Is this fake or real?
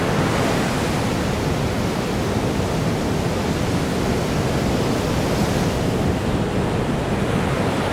real